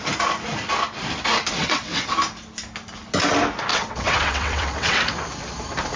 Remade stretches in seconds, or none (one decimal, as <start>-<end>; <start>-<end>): 1.6-2.1; 3.7-5.0